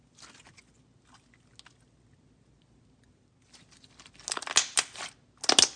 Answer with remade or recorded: recorded